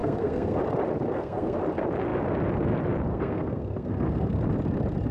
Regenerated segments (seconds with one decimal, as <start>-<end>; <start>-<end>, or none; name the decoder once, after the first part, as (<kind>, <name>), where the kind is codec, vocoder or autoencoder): 0.0-0.6 (codec, SNAC); 1.1-1.6; 3.1-4.4